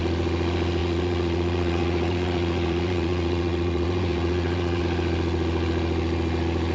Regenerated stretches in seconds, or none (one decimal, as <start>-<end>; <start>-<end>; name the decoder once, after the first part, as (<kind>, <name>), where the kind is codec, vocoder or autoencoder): 0.8-4.8 (vocoder, Vocos)

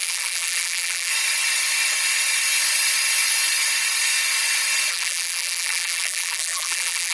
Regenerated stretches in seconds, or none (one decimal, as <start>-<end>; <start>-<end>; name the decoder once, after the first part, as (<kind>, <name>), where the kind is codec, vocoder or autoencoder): 0.0-1.1 (vocoder, BigVGAN v2); 4.9-7.1

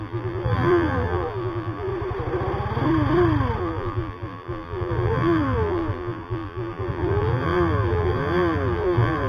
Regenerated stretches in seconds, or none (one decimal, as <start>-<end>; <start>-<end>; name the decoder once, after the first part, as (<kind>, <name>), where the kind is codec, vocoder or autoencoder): 0.0-1.9 (vocoder, BigVGAN v2); 3.6-9.3

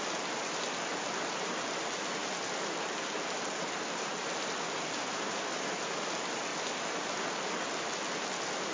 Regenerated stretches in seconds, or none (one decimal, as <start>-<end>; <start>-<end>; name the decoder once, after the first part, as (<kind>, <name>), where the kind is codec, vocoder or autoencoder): none

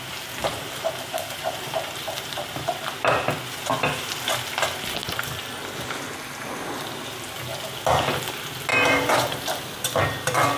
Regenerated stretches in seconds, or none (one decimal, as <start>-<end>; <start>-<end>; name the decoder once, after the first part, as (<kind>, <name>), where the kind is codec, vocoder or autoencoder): 0.5-2.7 (vocoder, BigVGAN v2); 8.7-9.6

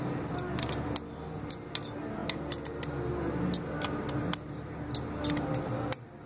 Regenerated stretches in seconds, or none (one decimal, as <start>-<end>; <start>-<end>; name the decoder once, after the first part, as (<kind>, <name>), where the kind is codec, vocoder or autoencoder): none